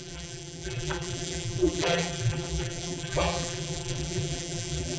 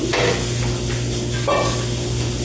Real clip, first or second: second